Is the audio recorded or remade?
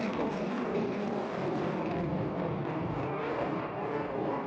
remade